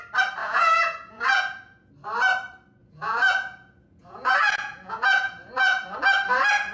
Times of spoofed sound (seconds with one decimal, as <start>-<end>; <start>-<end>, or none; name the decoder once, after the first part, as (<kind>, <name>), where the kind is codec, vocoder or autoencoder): 0.4-1.9 (vocoder, Vocos); 2.8-6.0